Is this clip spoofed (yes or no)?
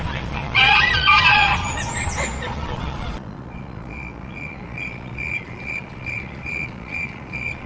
yes